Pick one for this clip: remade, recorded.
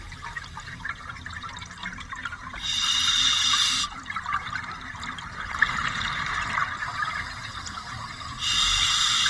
remade